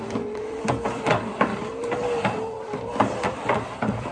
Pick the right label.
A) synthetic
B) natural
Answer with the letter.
A